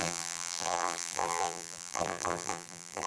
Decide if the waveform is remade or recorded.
remade